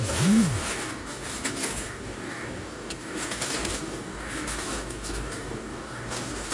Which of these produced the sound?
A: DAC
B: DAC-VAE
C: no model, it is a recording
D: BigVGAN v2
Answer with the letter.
A